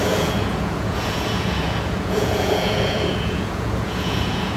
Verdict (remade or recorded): remade